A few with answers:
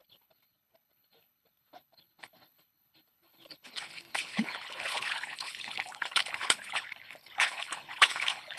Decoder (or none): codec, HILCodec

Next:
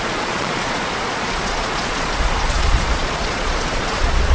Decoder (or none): vocoder, Vocos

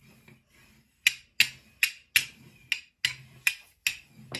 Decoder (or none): none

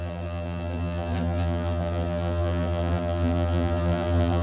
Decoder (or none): vocoder, BigVGAN v2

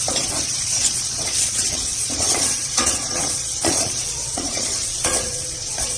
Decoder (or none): vocoder, Vocos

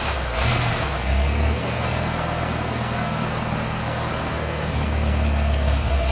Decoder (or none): codec, SNAC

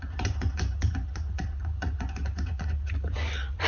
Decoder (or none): vocoder, Vocos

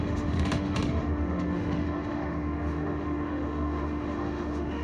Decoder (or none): autoencoder, DAC-VAE